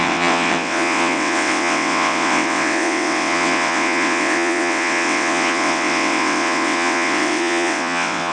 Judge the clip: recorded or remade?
remade